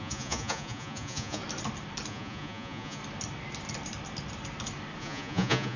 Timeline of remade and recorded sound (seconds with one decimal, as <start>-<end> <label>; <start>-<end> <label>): 0.0-1.4 remade; 1.4-2.1 recorded; 2.1-3.0 remade; 3.0-5.0 recorded; 5.0-5.8 remade

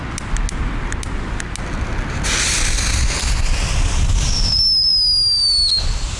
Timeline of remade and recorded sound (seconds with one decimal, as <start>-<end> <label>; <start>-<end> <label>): 0.0-6.2 recorded

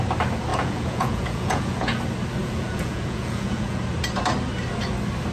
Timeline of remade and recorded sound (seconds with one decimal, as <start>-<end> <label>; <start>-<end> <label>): 0.0-0.5 recorded; 0.5-2.0 remade; 2.0-2.4 recorded; 2.4-3.8 remade; 3.8-5.3 recorded

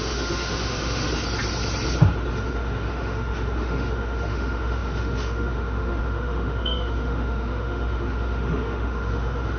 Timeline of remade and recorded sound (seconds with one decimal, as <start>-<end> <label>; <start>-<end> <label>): 0.0-1.1 remade; 1.1-2.3 recorded; 2.3-9.6 remade